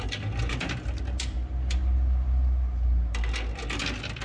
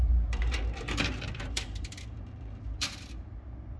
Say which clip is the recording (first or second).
first